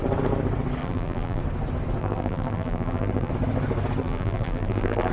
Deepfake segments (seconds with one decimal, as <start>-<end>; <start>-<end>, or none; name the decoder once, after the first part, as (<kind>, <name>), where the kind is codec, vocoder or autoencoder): 0.8-1.4 (vocoder, BigVGAN v2); 2.0-3.3; 4.0-5.1